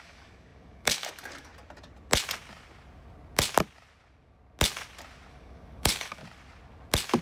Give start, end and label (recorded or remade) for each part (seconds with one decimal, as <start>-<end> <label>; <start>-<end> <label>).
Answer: 0.0-1.5 remade; 1.5-5.3 recorded; 5.3-6.2 remade; 6.2-7.2 recorded